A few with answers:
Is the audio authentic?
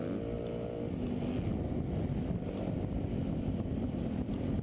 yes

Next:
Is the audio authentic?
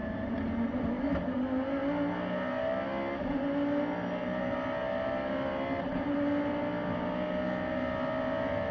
yes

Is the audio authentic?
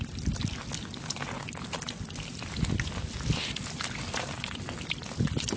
yes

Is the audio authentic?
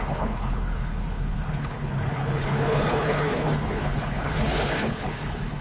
no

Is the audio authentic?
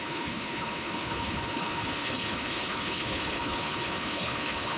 no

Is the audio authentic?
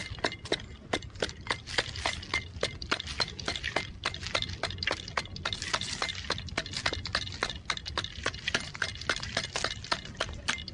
yes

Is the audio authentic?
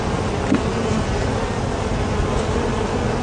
yes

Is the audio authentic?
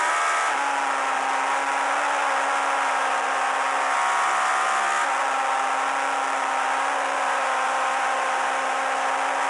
yes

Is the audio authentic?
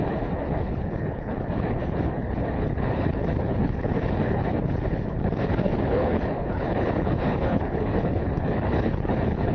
no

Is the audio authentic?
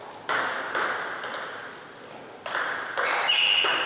yes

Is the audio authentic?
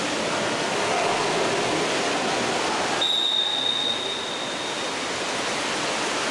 yes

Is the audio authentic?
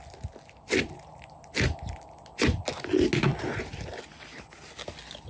yes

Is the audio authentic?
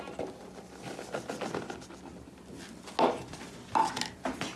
yes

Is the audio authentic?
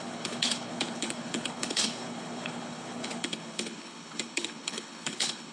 no